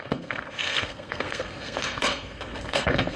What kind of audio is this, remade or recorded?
remade